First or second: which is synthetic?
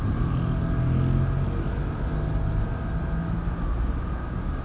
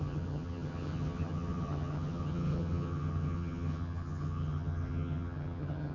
second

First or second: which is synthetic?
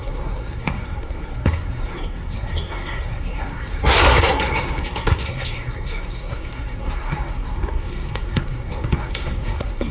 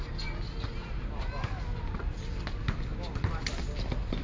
first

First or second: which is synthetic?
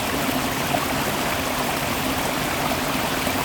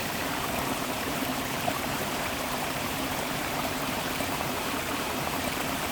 second